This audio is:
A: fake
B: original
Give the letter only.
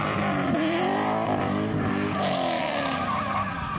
B